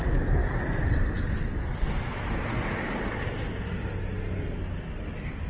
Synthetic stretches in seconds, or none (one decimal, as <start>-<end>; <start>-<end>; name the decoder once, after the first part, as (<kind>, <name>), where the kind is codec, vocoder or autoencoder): 0.4-3.7 (vocoder, BigVGAN v2)